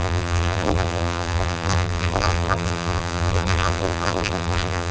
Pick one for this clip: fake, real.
fake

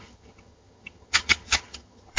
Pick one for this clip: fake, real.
fake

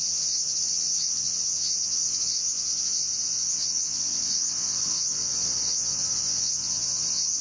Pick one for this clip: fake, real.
fake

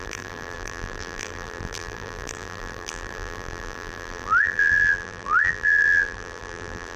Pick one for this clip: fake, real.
fake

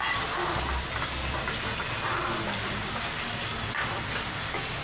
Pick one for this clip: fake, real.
real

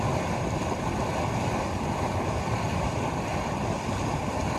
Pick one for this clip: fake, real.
real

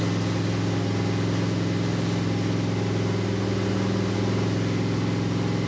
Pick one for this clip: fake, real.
real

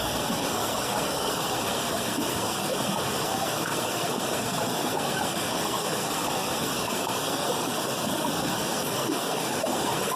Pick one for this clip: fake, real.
fake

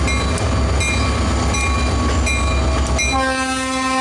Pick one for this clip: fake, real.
real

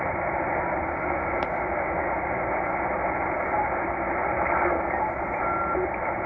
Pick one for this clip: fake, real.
real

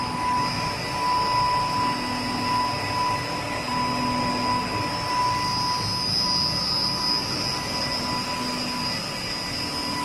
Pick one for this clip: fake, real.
real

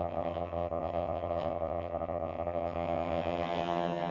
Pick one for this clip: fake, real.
fake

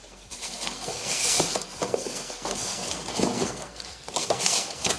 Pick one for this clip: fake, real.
fake